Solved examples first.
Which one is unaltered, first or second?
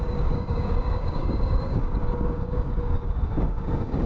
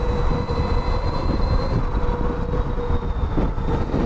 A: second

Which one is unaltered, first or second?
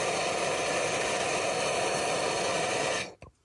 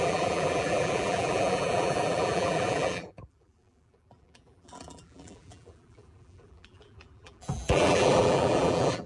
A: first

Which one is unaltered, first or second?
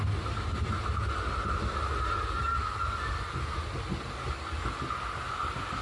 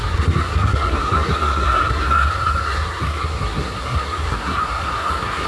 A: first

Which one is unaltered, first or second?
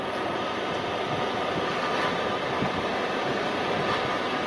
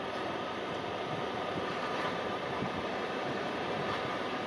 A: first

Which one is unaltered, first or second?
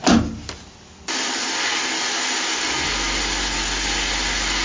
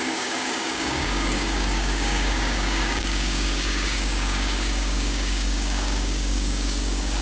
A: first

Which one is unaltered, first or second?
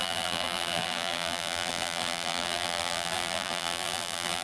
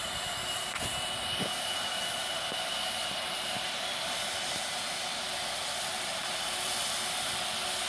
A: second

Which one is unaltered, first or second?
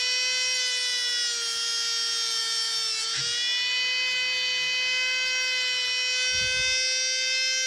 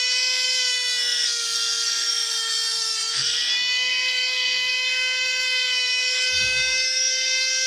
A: first